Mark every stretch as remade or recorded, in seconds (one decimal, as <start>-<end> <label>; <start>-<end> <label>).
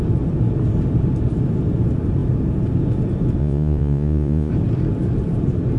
0.0-3.4 recorded; 3.4-4.5 remade; 4.5-5.8 recorded